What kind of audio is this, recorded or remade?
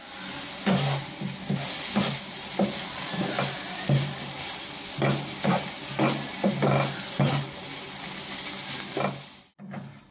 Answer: recorded